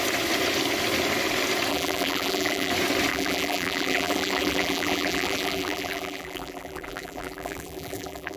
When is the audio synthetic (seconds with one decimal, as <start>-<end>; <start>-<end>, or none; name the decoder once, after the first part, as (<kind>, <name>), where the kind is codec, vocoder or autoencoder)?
1.7-2.7 (vocoder, BigVGAN v2); 3.1-8.4